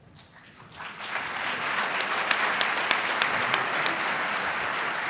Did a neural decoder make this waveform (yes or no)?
no